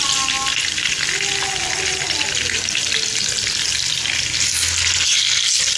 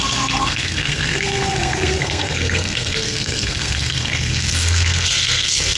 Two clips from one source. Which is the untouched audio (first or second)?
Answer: first